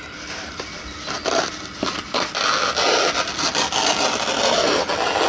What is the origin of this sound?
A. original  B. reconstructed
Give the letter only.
A